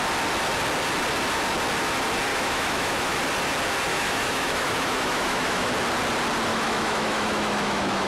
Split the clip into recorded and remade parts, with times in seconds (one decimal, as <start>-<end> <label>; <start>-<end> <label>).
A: 0.0-2.3 recorded; 2.3-3.2 remade; 3.2-3.9 recorded; 3.9-5.7 remade; 5.7-6.5 recorded; 6.5-8.1 remade